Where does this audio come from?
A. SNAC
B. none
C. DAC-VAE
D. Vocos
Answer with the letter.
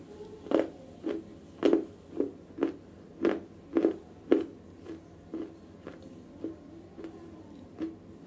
B